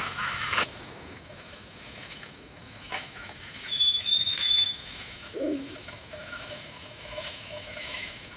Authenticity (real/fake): fake